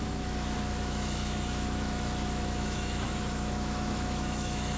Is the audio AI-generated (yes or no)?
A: yes